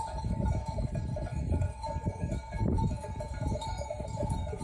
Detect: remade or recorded remade